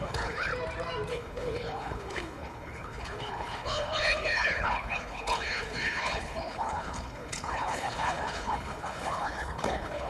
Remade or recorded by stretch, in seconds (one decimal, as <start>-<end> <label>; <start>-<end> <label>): 0.0-0.5 remade; 0.5-1.1 recorded; 1.1-10.1 remade